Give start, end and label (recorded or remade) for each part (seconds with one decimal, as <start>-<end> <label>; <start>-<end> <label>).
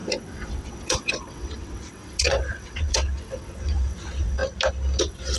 0.0-4.4 remade; 4.4-5.0 recorded; 5.0-5.4 remade